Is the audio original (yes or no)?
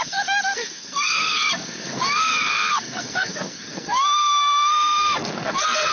no